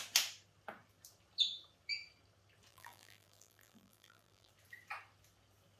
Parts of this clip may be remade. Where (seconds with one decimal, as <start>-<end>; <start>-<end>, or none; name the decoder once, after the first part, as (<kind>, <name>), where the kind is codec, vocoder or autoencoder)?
2.7-4.5 (vocoder, BigVGAN v2)